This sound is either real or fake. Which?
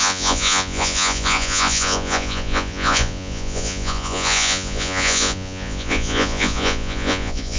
fake